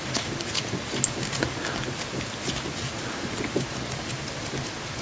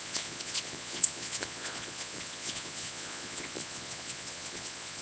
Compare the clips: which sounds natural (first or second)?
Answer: first